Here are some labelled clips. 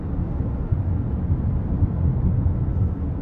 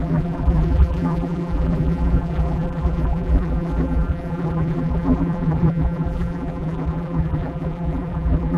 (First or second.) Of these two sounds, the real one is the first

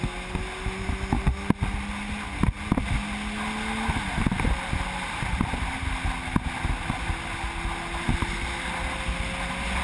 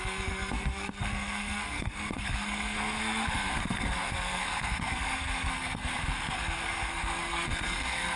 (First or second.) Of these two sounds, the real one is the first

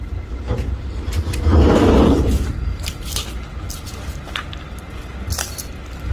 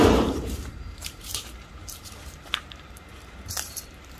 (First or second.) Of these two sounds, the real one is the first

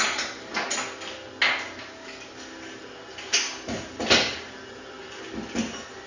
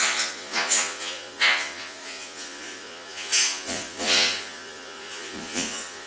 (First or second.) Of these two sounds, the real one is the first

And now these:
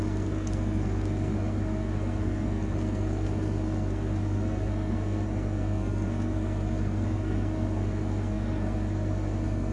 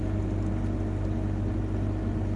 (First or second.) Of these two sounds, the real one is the second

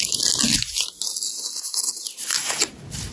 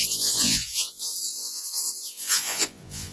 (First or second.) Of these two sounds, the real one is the first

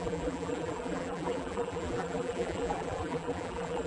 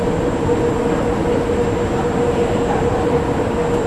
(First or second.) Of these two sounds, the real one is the second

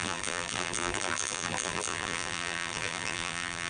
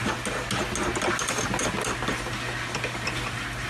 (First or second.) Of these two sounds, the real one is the second